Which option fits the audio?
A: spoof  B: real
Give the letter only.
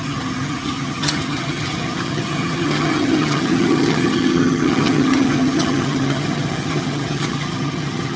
A